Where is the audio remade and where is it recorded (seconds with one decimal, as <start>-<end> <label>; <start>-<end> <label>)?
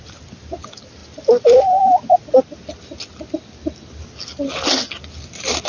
0.0-5.7 recorded